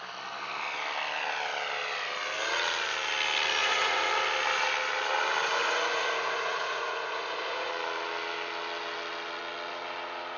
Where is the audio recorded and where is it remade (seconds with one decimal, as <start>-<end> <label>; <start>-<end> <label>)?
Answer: 0.0-3.6 recorded; 3.6-4.1 remade; 4.1-5.6 recorded; 5.6-7.7 remade; 7.7-10.4 recorded